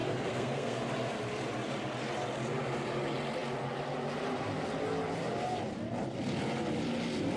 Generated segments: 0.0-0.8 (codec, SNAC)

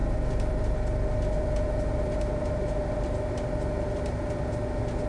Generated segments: none